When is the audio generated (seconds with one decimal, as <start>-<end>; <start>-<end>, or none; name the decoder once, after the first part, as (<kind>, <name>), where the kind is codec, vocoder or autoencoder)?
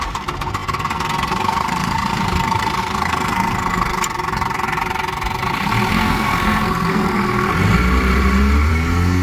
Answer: 0.0-3.9 (codec, SNAC); 5.9-7.5; 8.7-9.2